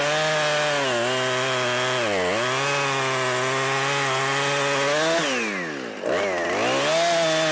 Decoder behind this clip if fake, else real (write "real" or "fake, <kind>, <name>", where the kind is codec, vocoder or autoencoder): real